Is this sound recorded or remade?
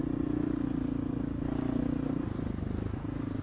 recorded